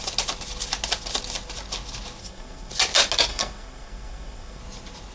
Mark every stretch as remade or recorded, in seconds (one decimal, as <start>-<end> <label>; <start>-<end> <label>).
0.0-2.2 recorded; 2.2-2.7 remade; 2.7-3.3 recorded; 3.3-4.6 remade; 4.6-5.1 recorded